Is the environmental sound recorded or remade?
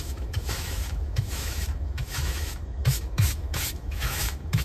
remade